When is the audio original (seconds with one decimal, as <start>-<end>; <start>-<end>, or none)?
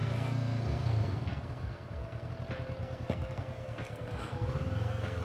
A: 2.3-2.8